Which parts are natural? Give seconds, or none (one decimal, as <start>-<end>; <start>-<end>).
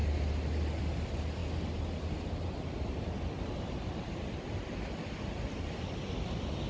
0.0-6.7